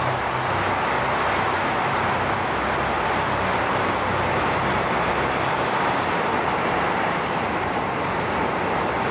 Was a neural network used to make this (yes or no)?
yes